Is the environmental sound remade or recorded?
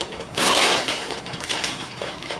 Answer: remade